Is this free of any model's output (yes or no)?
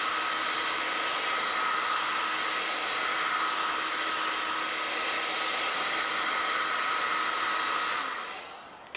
yes